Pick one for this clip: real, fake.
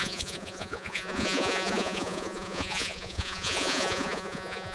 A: fake